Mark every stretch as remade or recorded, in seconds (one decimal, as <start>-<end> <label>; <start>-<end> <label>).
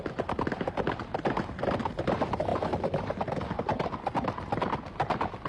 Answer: 0.0-5.5 recorded